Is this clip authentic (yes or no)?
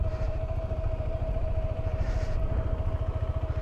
no